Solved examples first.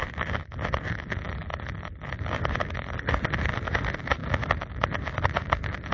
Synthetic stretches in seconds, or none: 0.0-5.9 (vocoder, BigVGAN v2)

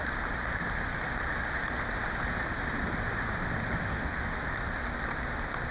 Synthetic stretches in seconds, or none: 3.8-4.4 (autoencoder, DAC-VAE)

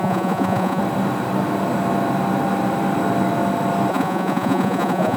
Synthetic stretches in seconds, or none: 0.0-0.8 (vocoder, Vocos); 3.9-5.2

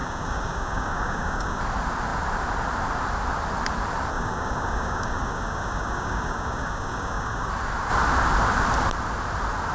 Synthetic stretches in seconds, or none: 0.0-1.6 (codec, DAC); 4.1-7.5

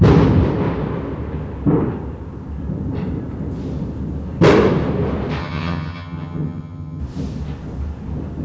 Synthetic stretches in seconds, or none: 5.4-7.0 (vocoder, HiFi-GAN)

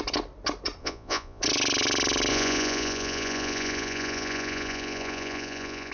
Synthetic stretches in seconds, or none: 0.8-1.4 (vocoder, Vocos); 2.3-5.9

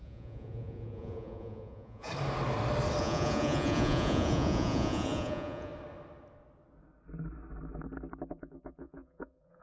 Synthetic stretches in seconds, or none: 0.0-2.1 (vocoder, Vocos); 3.0-5.7; 8.3-9.6